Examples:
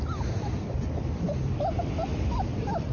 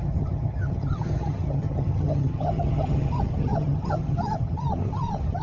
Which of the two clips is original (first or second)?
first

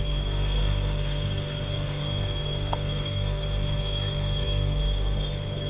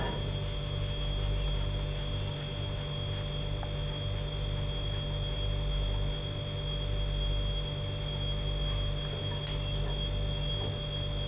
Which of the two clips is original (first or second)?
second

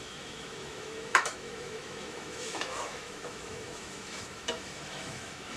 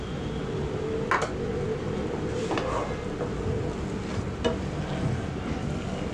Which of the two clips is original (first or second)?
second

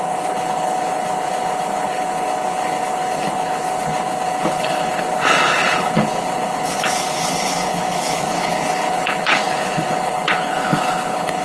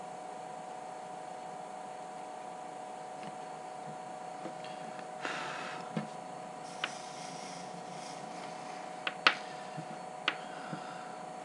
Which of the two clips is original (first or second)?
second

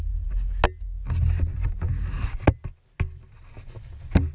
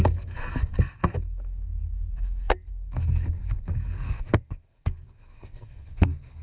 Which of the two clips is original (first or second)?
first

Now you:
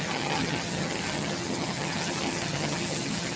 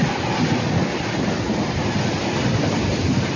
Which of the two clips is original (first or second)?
second